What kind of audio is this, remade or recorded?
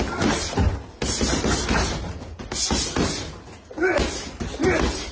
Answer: recorded